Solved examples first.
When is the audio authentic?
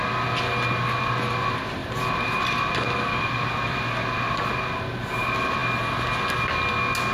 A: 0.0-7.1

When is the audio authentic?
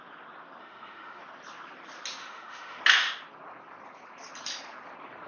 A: 0.0-0.6; 1.2-2.2; 2.8-5.3